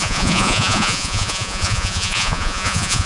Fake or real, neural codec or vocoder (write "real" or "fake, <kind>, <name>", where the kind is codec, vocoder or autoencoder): fake, vocoder, Vocos